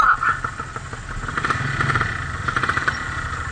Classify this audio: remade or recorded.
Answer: recorded